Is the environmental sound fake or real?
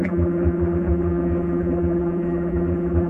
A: fake